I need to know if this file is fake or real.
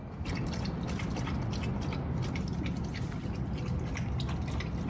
real